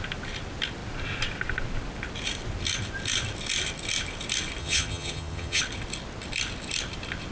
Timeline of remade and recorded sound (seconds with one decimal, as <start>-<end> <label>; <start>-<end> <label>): 0.0-4.6 recorded; 4.6-5.6 remade; 5.6-7.3 recorded